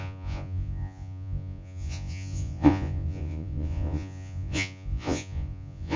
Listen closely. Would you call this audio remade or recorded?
remade